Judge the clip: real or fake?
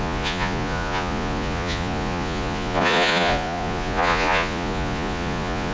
fake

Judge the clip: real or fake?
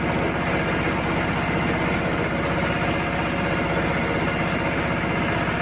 real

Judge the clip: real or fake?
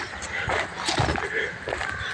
real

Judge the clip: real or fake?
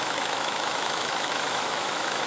fake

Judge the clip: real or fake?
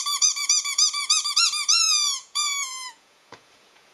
fake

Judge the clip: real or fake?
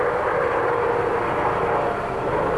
real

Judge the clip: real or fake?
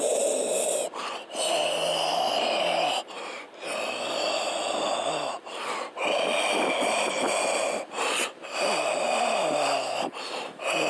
real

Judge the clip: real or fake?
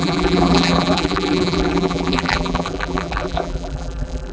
fake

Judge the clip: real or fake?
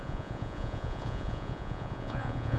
fake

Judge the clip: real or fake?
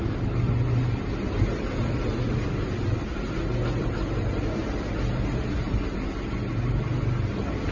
real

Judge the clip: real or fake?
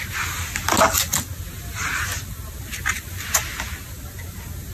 real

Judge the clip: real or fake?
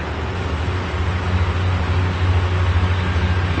real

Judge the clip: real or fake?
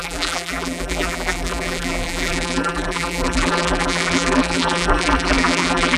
fake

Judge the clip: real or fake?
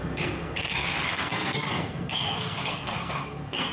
fake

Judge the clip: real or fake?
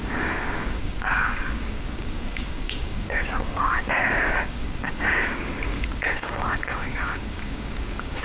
fake